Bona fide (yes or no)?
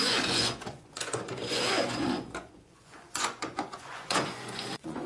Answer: no